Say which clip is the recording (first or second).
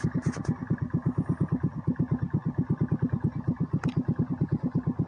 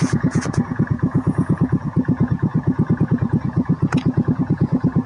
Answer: first